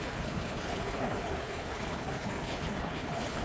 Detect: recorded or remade remade